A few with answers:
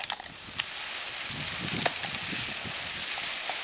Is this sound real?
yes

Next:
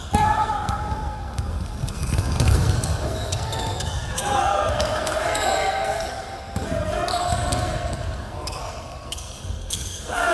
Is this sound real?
no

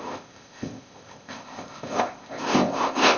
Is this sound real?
no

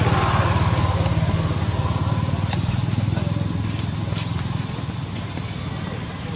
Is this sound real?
yes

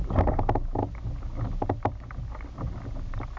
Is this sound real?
yes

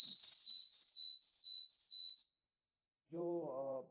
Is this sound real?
no